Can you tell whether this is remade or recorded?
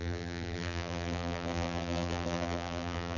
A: remade